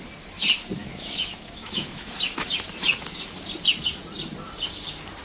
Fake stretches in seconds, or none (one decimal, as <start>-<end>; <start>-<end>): 0.8-2.1